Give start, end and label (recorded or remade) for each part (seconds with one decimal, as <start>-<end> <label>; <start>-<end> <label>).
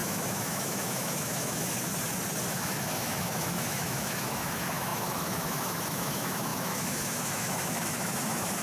0.0-1.9 remade; 1.9-2.5 recorded; 2.5-8.6 remade